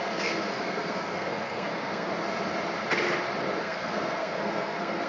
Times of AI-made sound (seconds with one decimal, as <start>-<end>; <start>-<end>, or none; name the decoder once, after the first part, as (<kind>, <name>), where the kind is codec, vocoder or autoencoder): 0.0-2.1 (codec, SNAC); 3.6-5.1